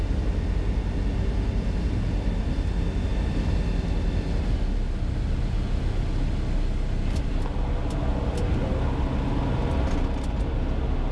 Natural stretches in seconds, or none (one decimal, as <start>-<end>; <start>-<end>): 0.0-11.1